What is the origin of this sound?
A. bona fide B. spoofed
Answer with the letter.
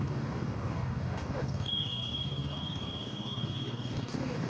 B